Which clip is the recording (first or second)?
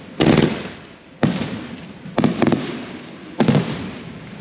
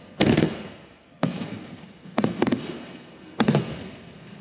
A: first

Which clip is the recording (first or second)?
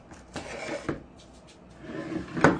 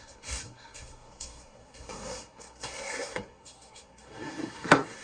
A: first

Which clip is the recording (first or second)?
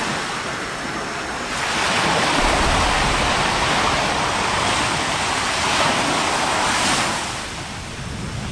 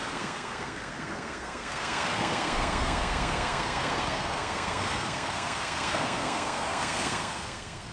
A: first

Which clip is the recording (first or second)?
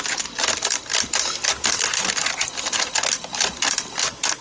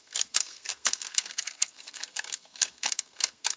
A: first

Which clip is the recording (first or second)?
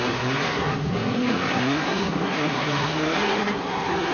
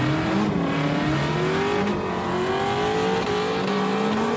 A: second